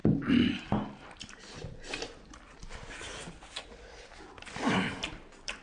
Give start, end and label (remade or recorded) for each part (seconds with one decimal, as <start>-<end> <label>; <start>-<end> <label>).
0.0-5.6 recorded